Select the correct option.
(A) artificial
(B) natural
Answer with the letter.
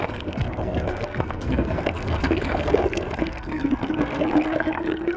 A